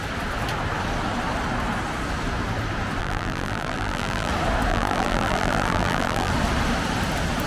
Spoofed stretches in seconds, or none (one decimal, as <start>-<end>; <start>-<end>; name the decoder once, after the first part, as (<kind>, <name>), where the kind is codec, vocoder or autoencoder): 3.0-4.3 (vocoder, BigVGAN v2); 4.7-6.3

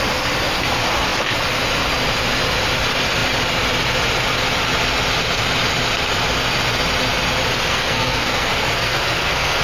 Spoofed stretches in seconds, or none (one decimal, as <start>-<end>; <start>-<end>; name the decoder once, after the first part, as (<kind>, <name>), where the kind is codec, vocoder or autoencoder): 7.7-9.6 (codec, SNAC)

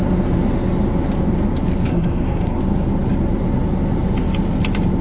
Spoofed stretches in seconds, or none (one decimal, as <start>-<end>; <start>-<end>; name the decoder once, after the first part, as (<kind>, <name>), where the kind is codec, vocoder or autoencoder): 1.9-2.6 (codec, SNAC)

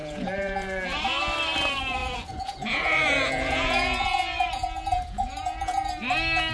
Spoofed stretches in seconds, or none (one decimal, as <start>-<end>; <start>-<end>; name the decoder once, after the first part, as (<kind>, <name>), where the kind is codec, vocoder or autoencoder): 0.0-1.2 (vocoder, Vocos); 2.0-5.9

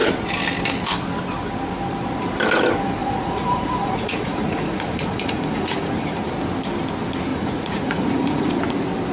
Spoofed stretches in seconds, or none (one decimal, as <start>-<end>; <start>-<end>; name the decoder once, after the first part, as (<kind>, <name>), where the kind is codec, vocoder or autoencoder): 3.0-6.3 (vocoder, Vocos); 7.3-8.5

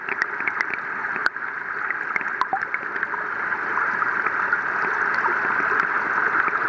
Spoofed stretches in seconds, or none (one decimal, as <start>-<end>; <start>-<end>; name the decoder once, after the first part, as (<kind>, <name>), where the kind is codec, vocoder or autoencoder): none

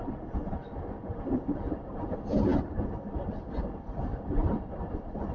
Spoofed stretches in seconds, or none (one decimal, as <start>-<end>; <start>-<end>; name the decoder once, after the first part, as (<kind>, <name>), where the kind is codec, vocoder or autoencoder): 0.6-1.9 (vocoder, BigVGAN v2); 2.5-3.5; 4.1-5.3

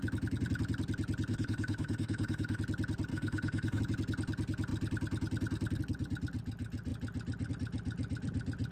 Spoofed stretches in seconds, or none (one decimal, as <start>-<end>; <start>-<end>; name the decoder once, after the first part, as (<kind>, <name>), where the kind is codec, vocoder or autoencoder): 1.3-2.6 (autoencoder, DAC-VAE); 3.1-3.8